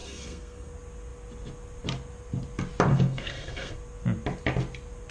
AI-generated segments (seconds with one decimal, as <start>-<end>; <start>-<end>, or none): 0.0-0.7; 2.9-3.7

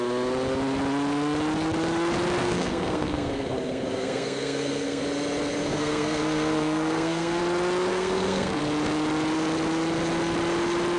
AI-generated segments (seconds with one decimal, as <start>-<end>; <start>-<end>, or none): 2.4-5.0; 5.6-7.4; 7.9-8.6

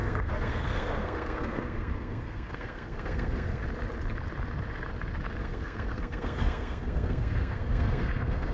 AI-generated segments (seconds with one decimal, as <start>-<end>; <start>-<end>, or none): 0.0-3.6; 5.4-8.5

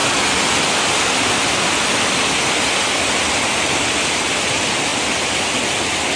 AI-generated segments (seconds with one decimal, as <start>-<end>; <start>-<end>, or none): none

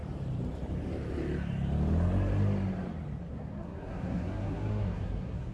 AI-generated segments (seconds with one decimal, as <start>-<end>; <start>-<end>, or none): 3.3-5.5

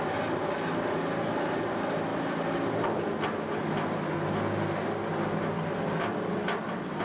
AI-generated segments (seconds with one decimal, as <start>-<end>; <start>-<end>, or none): none